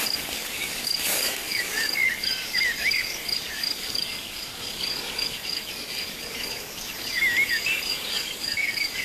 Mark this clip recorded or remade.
remade